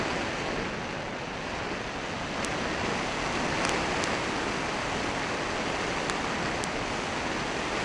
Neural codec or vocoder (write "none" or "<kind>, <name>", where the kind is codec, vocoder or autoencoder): none